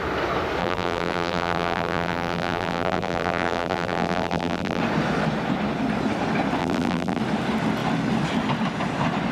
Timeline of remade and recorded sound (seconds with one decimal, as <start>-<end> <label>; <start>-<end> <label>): 0.0-0.6 recorded; 0.6-4.8 remade; 4.8-6.6 recorded; 6.6-7.2 remade; 7.2-9.3 recorded